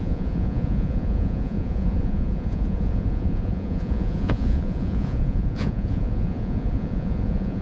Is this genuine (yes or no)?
no